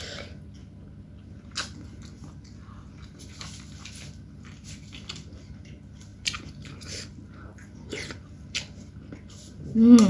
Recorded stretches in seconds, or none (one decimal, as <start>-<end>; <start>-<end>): 0.0-10.1